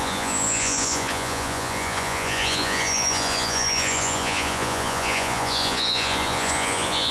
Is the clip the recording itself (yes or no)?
no